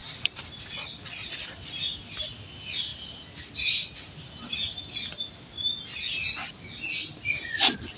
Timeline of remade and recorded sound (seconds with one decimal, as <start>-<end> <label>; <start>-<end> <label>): 0.0-0.6 remade; 0.6-8.0 recorded